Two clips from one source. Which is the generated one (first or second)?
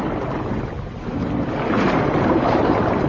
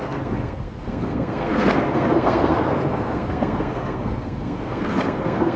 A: second